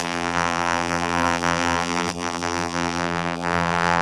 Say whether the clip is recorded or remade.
remade